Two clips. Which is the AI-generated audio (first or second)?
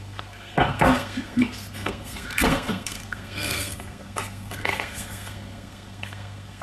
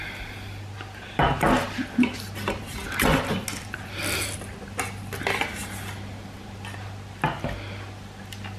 first